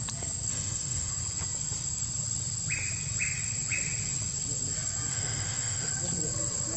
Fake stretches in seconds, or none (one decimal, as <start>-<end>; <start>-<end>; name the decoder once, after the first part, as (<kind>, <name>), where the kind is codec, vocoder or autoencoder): 0.5-1.1 (autoencoder, DAC-VAE); 5.1-5.9

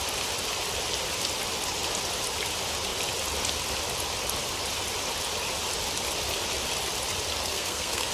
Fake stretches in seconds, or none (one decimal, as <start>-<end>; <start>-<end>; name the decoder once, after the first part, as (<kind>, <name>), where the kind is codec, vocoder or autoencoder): 7.4-8.1 (codec, SNAC)

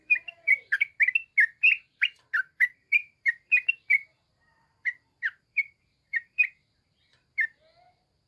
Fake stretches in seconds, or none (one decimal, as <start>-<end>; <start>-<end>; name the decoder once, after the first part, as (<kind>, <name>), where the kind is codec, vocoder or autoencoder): 0.0-1.0 (vocoder, BigVGAN v2); 1.9-6.5